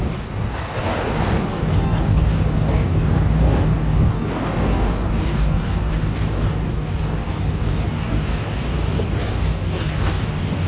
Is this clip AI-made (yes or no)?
yes